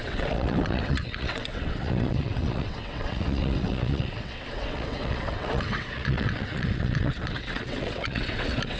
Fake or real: fake